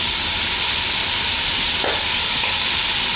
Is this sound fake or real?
real